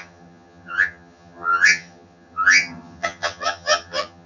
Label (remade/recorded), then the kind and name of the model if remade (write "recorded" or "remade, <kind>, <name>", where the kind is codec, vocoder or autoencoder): remade, vocoder, HiFi-GAN